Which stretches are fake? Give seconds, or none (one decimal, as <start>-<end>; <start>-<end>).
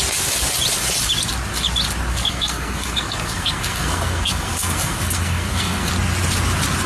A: 2.1-5.9